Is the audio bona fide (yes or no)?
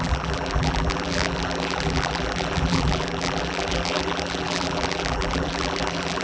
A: no